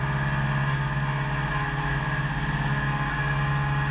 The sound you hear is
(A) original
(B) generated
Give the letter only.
A